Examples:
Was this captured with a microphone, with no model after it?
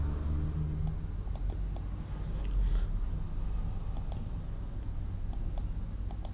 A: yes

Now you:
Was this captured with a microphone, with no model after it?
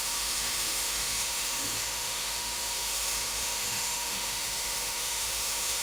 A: no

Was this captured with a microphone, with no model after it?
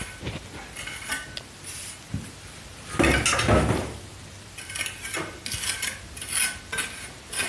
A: yes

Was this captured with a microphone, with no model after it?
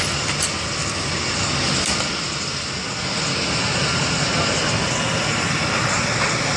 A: yes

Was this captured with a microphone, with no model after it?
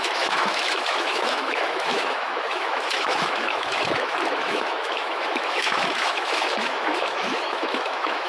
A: no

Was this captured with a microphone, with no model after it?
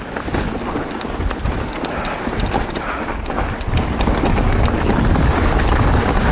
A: yes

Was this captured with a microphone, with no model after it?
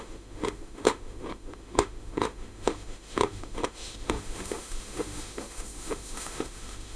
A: no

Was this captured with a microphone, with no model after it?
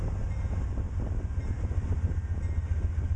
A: yes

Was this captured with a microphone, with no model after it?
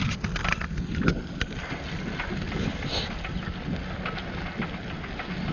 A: yes